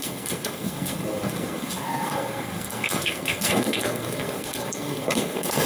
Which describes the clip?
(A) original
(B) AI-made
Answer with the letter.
B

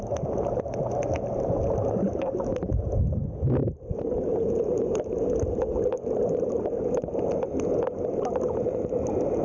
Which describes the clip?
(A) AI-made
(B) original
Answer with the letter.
B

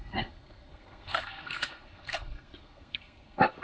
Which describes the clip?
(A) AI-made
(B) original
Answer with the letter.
A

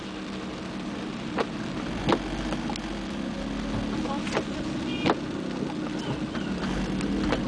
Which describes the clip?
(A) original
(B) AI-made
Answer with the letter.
A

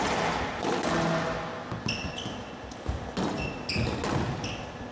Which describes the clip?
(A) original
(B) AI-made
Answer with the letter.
A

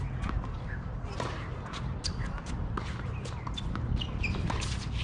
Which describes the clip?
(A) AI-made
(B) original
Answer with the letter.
B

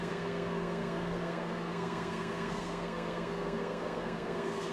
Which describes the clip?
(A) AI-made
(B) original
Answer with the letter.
A